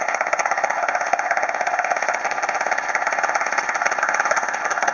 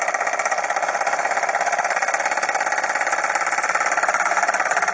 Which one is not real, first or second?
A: first